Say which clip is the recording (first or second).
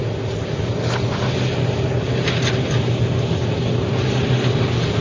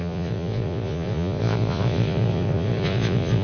first